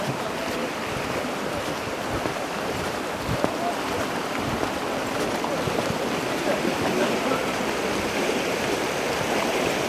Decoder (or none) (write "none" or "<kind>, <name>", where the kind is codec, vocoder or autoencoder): none